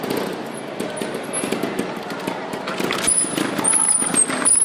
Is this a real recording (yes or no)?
yes